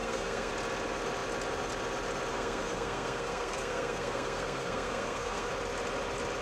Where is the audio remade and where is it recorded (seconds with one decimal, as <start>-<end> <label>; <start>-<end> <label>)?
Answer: 0.0-0.5 remade; 0.5-2.3 recorded; 2.3-5.5 remade; 5.5-6.4 recorded